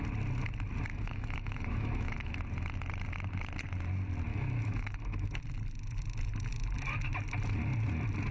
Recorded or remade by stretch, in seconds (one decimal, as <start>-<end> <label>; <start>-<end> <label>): 0.0-0.9 recorded; 0.9-2.3 remade; 2.3-4.3 recorded; 4.3-5.4 remade; 5.4-8.3 recorded